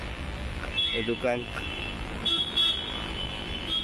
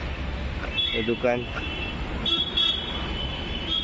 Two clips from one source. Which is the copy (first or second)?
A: first